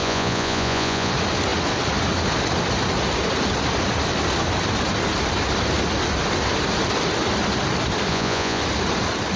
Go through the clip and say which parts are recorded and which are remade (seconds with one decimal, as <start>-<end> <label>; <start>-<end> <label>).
0.0-1.1 remade; 1.1-8.1 recorded; 8.1-8.6 remade; 8.6-9.4 recorded